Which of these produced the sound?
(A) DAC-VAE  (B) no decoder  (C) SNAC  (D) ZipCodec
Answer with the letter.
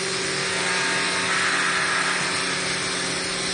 B